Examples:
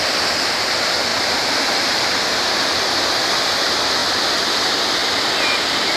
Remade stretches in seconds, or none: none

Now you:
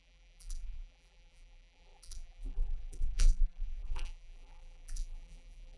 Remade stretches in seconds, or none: 0.0-5.8 (vocoder, BigVGAN v2)

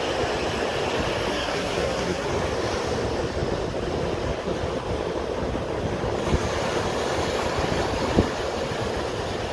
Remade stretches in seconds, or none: 1.3-2.3 (codec, SNAC)